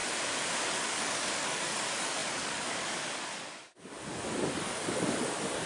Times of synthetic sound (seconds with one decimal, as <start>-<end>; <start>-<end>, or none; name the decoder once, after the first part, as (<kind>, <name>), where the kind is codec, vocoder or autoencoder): 0.6-5.7 (codec, DAC)